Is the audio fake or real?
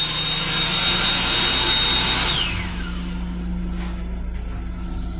real